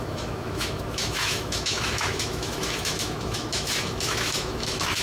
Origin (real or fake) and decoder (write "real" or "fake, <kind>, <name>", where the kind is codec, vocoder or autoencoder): fake, autoencoder, DAC-VAE